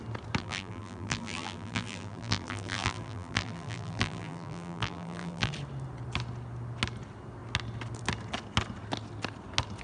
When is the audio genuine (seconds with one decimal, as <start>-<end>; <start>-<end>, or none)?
0.0-0.4; 5.5-9.8